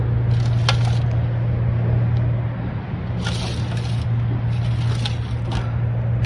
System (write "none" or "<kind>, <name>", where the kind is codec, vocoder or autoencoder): none